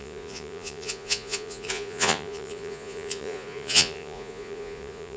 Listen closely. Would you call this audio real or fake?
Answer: fake